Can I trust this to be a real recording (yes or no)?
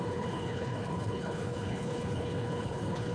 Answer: no